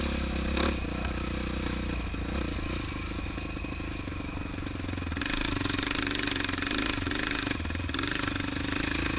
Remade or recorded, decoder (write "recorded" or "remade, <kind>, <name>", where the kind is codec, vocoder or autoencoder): recorded